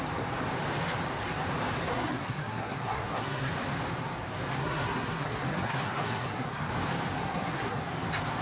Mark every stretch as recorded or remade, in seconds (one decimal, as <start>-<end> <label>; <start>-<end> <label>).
0.0-1.9 recorded; 1.9-3.5 remade; 3.5-4.6 recorded; 4.6-6.7 remade; 6.7-7.2 recorded; 7.2-7.8 remade; 7.8-8.4 recorded